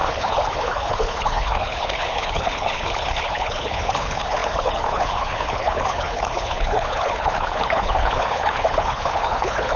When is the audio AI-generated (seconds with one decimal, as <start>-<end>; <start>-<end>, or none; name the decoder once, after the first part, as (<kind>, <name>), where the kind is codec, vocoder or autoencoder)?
0.0-9.8 (codec, HILCodec)